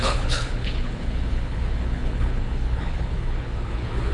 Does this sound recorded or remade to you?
remade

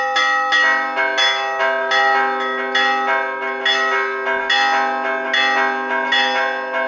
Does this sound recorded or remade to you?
recorded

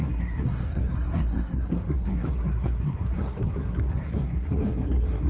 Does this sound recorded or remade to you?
remade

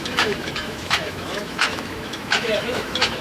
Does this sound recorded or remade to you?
remade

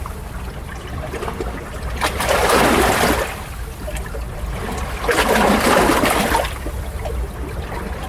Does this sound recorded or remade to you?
remade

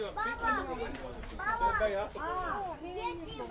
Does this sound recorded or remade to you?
recorded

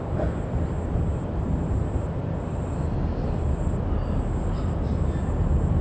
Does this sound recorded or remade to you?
recorded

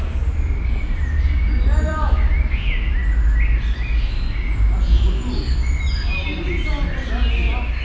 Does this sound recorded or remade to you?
recorded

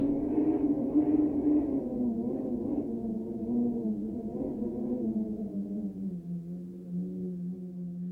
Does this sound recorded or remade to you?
recorded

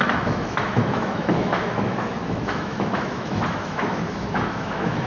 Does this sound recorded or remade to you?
remade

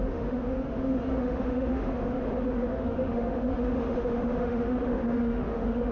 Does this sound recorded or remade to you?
remade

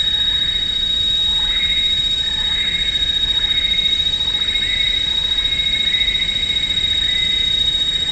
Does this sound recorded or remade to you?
recorded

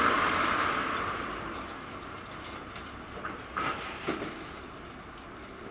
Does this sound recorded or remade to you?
remade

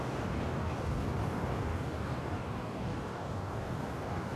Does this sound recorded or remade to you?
remade